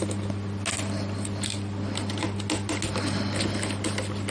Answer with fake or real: real